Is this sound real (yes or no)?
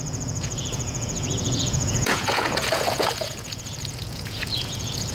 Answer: no